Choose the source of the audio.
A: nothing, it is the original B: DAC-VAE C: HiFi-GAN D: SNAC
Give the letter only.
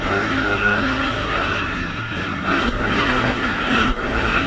D